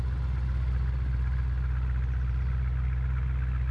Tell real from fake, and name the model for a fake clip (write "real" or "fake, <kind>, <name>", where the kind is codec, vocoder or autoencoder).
real